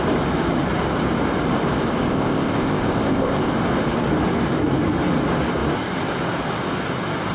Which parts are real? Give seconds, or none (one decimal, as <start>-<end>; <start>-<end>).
0.0-2.1; 3.5-7.3